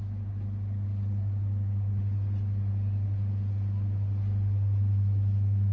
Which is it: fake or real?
real